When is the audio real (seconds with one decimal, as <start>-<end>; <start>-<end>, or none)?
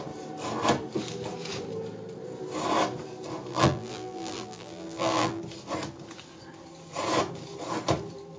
0.0-3.5; 5.4-8.4